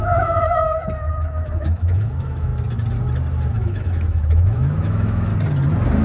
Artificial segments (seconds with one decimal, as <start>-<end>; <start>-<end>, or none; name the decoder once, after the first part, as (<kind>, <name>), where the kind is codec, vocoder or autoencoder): 0.0-2.5 (autoencoder, DAC-VAE); 3.5-5.3